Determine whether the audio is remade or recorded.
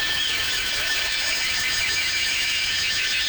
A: remade